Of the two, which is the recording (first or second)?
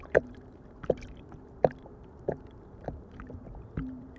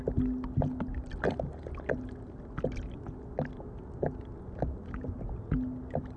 second